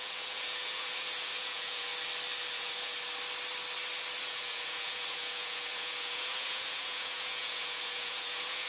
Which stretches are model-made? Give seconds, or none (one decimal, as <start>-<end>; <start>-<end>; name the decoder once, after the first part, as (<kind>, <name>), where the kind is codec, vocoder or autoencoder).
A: 0.0-1.9 (vocoder, Vocos); 2.5-2.9; 4.2-8.7